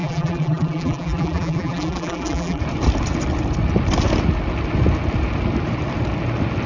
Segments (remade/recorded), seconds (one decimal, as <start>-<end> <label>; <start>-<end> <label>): 0.0-2.6 remade; 2.6-6.7 recorded